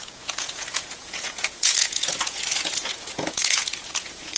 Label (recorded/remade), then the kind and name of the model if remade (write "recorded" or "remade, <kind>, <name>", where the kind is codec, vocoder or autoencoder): remade, vocoder, Vocos